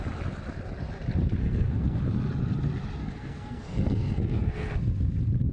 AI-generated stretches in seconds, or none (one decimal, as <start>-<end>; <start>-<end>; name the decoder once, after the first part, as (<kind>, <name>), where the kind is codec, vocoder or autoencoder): 1.4-2.0 (codec, SNAC); 3.0-4.7